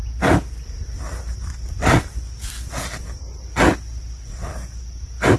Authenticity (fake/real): real